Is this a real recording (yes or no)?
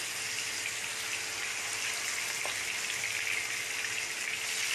yes